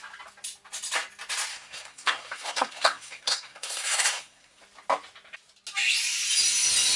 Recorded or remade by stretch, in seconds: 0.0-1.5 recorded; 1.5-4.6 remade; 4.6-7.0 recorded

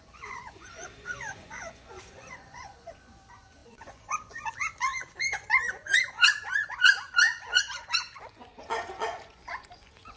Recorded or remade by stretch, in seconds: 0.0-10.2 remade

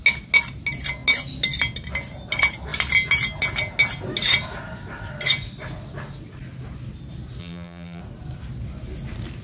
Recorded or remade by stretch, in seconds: 0.0-7.4 recorded; 7.4-8.0 remade; 8.0-9.4 recorded

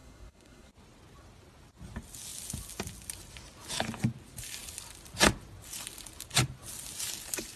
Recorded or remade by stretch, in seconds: 0.0-0.7 remade; 0.7-7.6 recorded

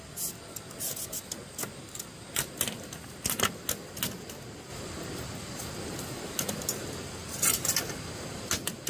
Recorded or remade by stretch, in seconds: 0.0-8.9 recorded

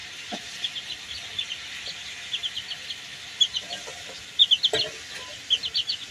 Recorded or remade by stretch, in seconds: 0.0-6.1 recorded

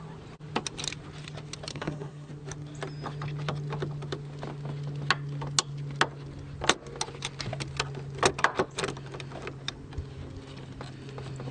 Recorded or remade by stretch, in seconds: 0.0-1.7 recorded; 1.7-2.3 remade; 2.3-11.5 recorded

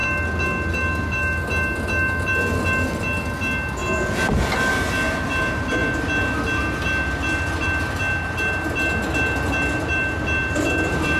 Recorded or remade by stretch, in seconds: 0.0-11.2 recorded